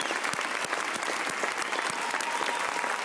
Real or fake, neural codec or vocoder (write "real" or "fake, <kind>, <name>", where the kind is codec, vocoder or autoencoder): real